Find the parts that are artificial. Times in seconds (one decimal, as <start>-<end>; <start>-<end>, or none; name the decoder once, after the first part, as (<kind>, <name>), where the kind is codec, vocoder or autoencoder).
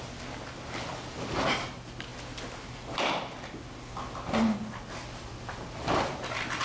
none